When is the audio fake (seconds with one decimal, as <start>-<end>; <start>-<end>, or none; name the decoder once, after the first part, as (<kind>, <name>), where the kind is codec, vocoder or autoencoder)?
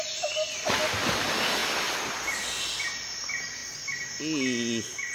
none